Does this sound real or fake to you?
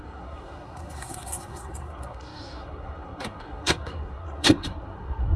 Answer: fake